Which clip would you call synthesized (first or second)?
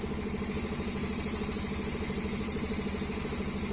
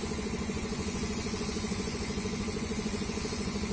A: second